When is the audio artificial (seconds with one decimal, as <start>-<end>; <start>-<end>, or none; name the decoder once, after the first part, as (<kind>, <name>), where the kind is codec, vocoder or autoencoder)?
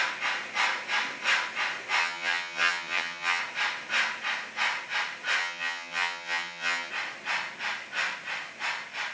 2.0-3.4 (vocoder, HiFi-GAN); 5.4-6.9